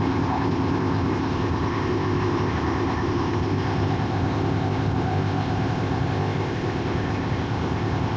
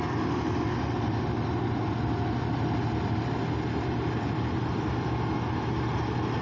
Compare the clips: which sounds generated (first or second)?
first